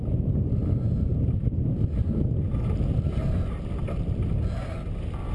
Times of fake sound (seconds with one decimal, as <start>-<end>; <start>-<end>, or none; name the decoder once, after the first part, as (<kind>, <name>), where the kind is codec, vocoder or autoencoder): none